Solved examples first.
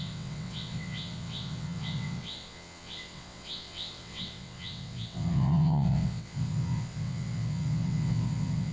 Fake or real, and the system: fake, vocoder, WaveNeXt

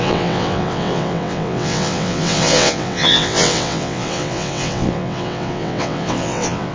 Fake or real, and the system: fake, vocoder, WaveNeXt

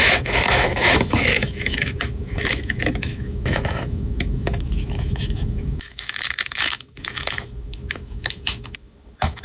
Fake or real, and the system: fake, autoencoder, DAC-VAE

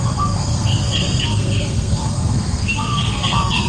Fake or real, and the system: fake, codec, SNAC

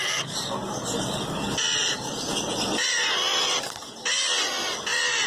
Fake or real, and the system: real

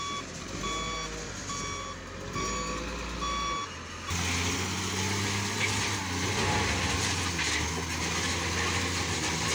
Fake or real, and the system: real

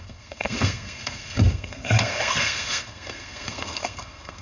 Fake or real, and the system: fake, codec, SNAC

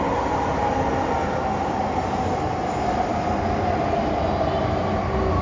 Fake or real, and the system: real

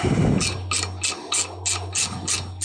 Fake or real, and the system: real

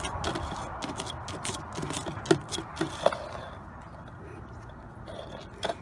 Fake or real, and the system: real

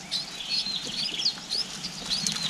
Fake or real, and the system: real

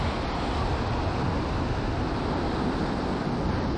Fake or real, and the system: real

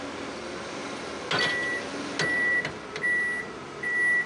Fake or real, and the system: real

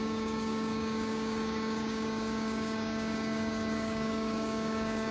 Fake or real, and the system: fake, codec, DAC